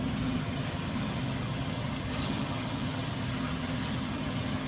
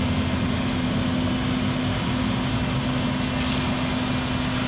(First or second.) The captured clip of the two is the second